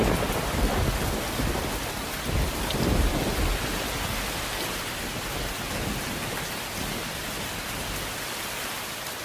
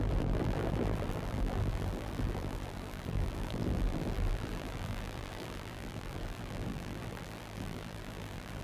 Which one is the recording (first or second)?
first